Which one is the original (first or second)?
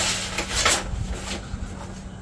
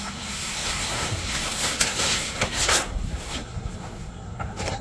first